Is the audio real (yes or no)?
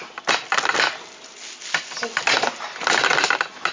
yes